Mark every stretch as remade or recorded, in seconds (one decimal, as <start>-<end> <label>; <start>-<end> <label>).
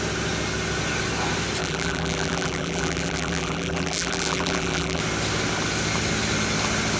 0.0-1.6 recorded; 1.6-5.0 remade; 5.0-7.0 recorded